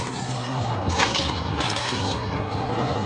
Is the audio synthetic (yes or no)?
yes